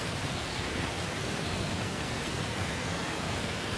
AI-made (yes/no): yes